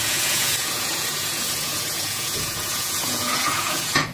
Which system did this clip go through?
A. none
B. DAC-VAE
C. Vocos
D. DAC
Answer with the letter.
C